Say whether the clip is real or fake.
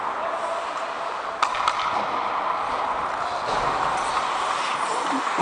real